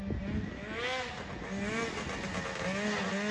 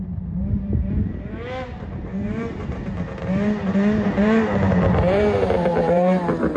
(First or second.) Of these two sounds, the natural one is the first